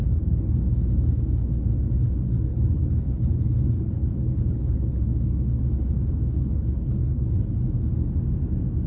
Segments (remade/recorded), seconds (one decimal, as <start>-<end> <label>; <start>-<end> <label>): 0.0-0.6 remade; 0.6-2.5 recorded; 2.5-7.6 remade; 7.6-8.9 recorded